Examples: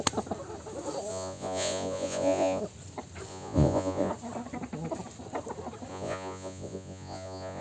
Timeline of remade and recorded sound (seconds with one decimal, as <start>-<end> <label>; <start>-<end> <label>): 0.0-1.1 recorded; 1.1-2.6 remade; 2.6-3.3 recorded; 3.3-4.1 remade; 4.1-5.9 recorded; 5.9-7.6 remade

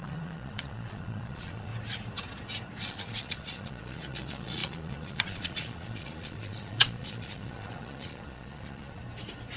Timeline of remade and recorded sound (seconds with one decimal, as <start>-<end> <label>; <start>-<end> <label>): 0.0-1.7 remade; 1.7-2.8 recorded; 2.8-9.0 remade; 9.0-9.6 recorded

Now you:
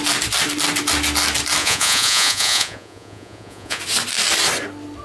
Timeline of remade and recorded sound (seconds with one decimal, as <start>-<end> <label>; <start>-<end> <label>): 0.0-1.6 recorded; 1.6-3.8 remade; 3.8-5.0 recorded

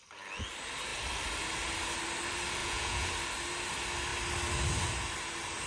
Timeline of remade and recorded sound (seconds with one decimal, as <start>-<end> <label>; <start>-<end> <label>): 0.0-2.6 recorded; 2.6-3.1 remade; 3.1-5.7 recorded